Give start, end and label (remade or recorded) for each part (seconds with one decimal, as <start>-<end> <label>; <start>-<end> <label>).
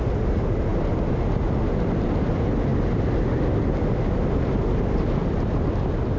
0.0-6.2 recorded